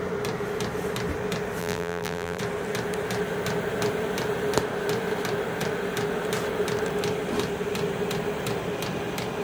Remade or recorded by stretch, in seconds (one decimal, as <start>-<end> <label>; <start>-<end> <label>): 0.0-1.6 recorded; 1.6-2.4 remade; 2.4-9.4 recorded